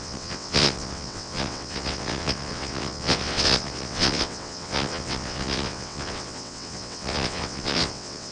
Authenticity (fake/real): fake